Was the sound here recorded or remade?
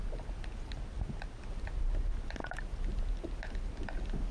recorded